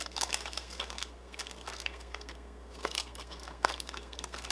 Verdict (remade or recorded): remade